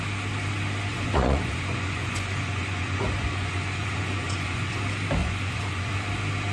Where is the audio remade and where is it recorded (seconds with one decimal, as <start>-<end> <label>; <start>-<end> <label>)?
0.0-0.9 recorded; 0.9-4.8 remade; 4.8-5.2 recorded; 5.2-5.9 remade; 5.9-6.5 recorded